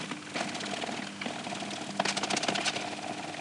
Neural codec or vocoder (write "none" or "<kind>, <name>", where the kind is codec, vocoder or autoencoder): none